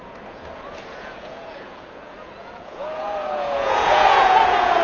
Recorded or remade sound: remade